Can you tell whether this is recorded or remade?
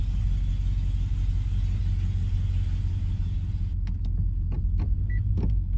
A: recorded